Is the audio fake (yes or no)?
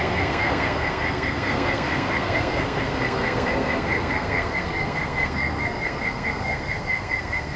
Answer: yes